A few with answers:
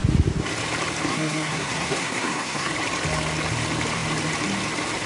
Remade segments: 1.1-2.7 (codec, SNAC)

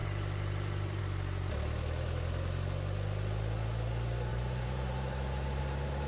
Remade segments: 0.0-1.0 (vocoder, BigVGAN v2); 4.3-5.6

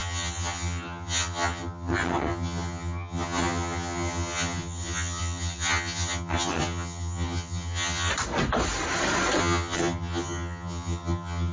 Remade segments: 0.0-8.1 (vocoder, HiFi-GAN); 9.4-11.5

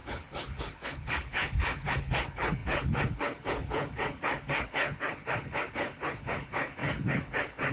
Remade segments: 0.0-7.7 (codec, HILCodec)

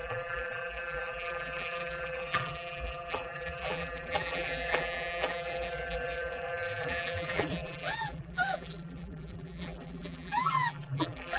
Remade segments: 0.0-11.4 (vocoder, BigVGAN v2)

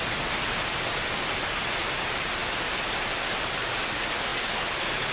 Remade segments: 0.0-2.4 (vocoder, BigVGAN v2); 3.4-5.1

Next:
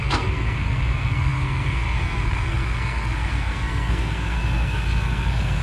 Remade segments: 0.0-5.6 (codec, SNAC)

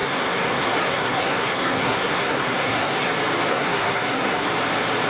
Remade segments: 0.0-3.1 (codec, SNAC); 3.5-4.5